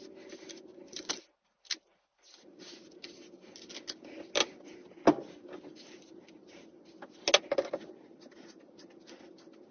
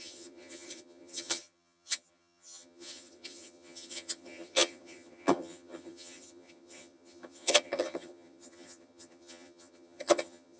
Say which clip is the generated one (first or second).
second